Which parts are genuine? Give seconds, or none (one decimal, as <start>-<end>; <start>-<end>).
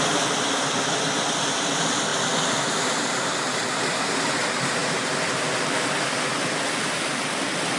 0.0-7.8